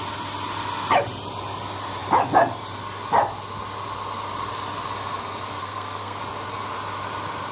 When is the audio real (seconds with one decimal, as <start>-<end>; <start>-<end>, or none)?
0.0-5.6; 6.2-7.5